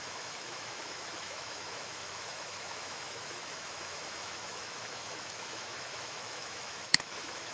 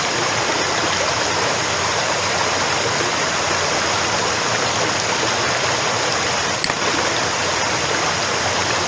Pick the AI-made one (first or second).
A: first